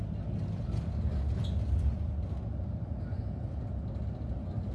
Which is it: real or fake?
real